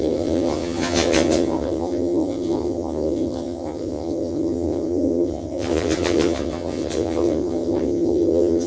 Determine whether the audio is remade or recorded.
remade